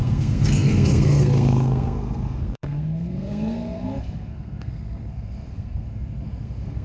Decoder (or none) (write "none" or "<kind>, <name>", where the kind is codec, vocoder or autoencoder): codec, SNAC